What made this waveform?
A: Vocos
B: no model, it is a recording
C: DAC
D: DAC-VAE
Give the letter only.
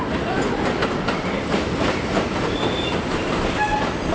B